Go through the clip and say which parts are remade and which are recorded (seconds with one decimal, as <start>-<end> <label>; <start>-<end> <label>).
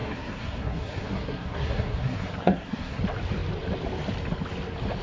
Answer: 0.0-3.0 remade; 3.0-5.0 recorded